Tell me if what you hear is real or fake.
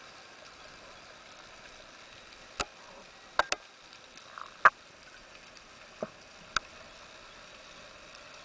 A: real